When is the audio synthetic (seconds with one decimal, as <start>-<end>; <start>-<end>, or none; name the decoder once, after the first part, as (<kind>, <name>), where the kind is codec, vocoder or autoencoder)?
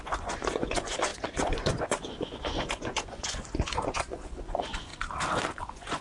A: 0.0-4.9 (vocoder, Vocos); 5.6-6.0